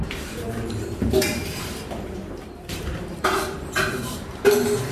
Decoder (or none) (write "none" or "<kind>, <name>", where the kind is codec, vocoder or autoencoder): vocoder, BigVGAN v2